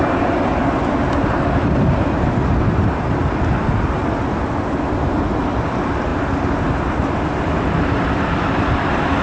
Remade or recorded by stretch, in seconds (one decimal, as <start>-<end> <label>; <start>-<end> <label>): 0.0-4.0 remade; 4.0-5.4 recorded; 5.4-6.1 remade; 6.1-6.6 recorded; 6.6-9.2 remade